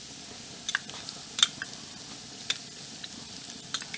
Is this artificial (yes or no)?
no